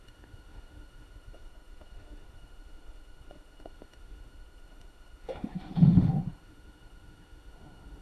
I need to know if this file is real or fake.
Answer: fake